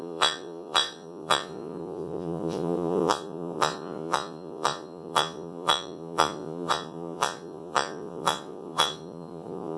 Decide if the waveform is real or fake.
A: fake